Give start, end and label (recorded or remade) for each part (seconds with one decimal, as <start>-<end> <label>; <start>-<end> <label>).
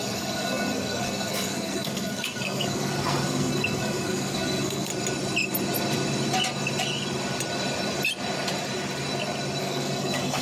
0.0-4.9 remade; 4.9-9.6 recorded; 9.6-10.4 remade